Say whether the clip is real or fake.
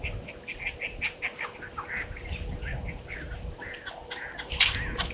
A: real